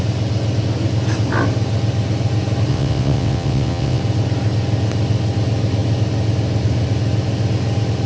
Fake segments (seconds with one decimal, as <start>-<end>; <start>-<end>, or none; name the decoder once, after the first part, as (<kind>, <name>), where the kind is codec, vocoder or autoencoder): 2.7-4.0 (vocoder, WaveNeXt)